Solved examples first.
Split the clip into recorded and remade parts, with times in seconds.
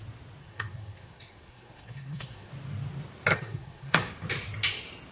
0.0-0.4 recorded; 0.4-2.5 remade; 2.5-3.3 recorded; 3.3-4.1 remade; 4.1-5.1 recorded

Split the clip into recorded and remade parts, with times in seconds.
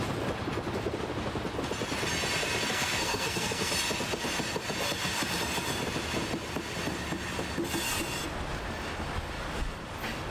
0.0-2.7 recorded; 2.7-3.7 remade; 3.7-10.3 recorded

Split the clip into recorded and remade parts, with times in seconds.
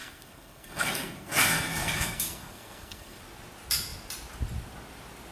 0.0-3.2 remade; 3.2-5.3 recorded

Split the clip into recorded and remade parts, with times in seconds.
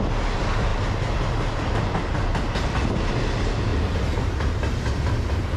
0.0-5.6 recorded